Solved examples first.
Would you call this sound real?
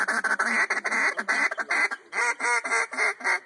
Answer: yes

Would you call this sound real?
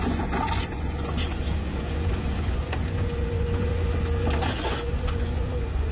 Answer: no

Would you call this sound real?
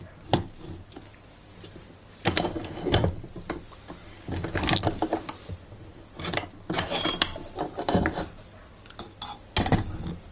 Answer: yes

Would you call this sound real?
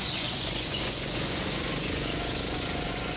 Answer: no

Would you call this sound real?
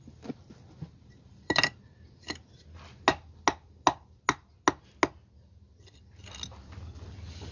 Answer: yes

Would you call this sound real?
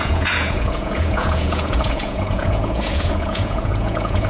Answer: no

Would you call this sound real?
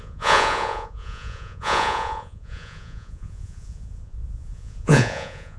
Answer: no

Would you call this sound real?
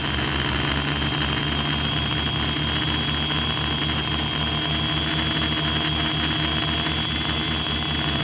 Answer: yes